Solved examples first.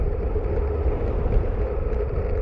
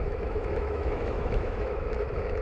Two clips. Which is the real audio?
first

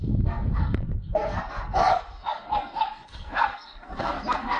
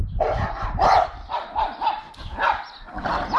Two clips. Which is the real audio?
second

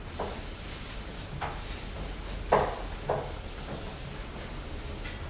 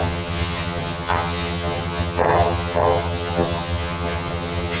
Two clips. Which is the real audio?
first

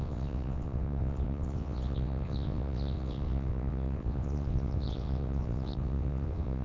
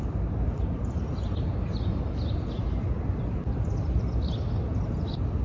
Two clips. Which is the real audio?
second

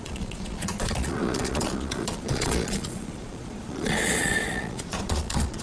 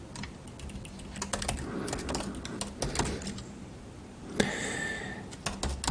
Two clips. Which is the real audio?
second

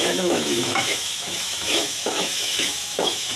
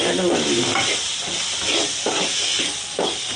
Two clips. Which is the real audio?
second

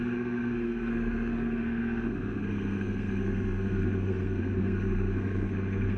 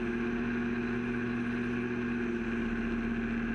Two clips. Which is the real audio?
second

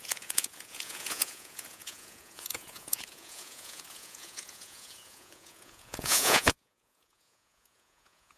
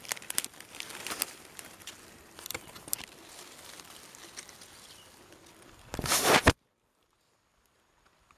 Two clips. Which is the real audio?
second